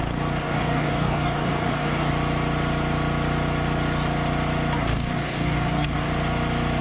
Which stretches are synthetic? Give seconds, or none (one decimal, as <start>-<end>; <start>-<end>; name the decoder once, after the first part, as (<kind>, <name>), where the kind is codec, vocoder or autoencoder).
0.4-2.1 (codec, DAC); 4.9-6.1